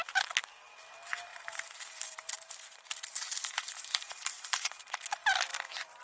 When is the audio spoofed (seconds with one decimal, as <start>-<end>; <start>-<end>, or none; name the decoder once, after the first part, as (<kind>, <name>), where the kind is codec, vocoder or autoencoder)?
1.3-4.9 (vocoder, BigVGAN v2); 5.5-6.0